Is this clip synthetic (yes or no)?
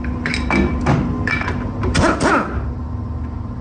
no